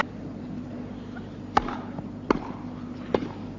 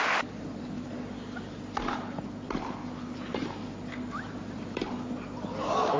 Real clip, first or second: second